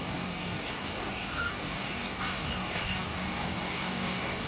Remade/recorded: remade